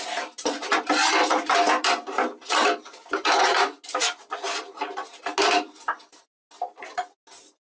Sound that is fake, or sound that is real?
real